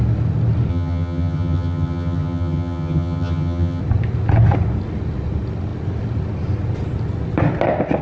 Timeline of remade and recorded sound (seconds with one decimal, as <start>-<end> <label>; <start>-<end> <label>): 0.0-0.7 recorded; 0.7-3.8 remade; 3.8-8.0 recorded